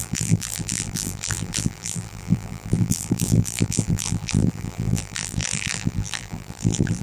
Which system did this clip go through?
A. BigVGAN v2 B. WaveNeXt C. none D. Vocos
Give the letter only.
A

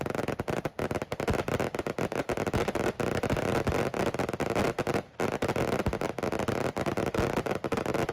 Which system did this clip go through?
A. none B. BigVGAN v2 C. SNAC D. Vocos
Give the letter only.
A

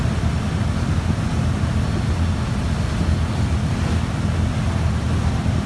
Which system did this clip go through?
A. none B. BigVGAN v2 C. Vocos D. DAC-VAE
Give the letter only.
A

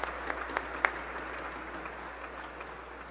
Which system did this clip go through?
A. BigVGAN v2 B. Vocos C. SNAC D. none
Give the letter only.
D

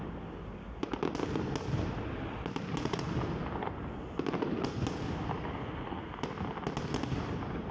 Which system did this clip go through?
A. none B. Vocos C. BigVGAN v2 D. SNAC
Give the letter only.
A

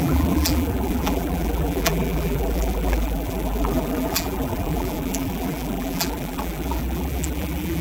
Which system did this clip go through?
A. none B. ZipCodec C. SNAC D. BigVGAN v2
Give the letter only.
D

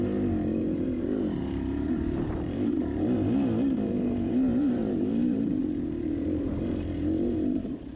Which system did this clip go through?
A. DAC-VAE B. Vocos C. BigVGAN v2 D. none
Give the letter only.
C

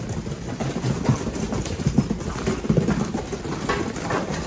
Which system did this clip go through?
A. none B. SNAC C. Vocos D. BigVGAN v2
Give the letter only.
A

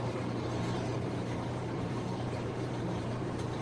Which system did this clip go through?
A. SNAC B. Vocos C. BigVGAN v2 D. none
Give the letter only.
C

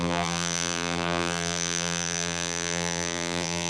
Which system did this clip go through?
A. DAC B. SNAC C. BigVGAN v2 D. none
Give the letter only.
C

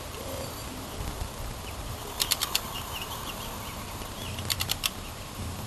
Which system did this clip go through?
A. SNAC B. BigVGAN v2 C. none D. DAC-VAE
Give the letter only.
B